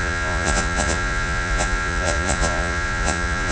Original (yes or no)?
no